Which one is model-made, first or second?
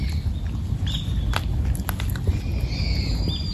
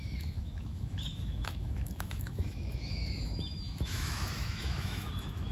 second